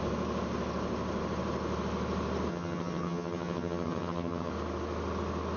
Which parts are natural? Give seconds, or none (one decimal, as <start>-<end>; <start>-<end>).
0.0-2.5; 4.5-5.6